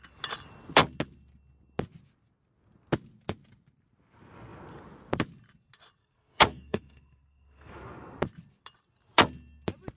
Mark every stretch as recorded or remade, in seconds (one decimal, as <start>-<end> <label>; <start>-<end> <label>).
0.0-6.0 recorded; 6.0-7.7 remade; 7.7-10.0 recorded